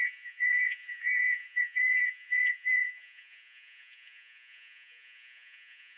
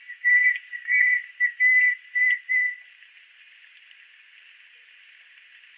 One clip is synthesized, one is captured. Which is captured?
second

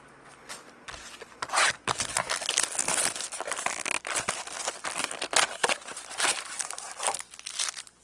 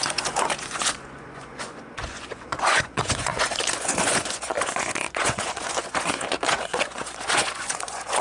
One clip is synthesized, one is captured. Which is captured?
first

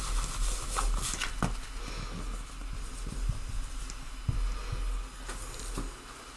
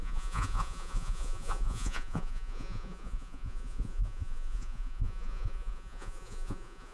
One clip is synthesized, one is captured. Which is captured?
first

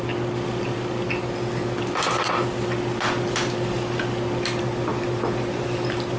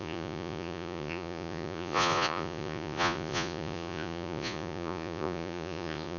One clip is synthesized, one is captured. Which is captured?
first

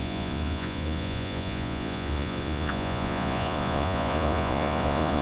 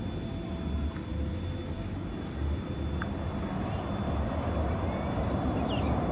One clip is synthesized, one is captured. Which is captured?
second